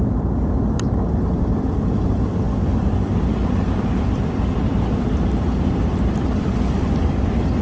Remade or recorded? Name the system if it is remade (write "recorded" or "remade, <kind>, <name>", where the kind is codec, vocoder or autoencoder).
remade, vocoder, BigVGAN v2